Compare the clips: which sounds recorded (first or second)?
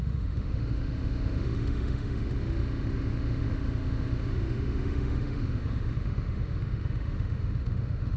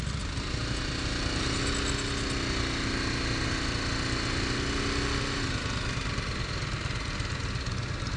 second